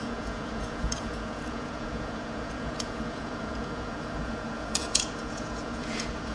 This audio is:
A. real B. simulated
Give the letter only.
B